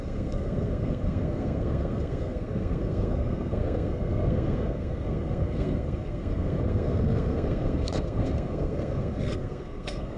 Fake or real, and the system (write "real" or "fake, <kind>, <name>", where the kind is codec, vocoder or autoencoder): fake, codec, SNAC